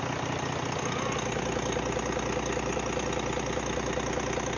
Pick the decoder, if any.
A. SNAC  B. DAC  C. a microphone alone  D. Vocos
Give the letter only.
C